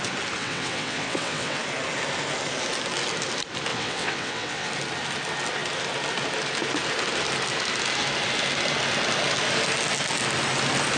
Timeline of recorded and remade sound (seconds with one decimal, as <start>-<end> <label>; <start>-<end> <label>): 0.0-0.4 recorded; 0.4-1.6 remade; 1.6-3.7 recorded; 3.7-4.7 remade; 4.7-11.0 recorded